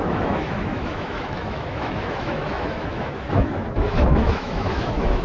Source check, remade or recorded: remade